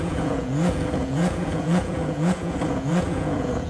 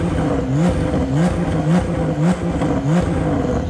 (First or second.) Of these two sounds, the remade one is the first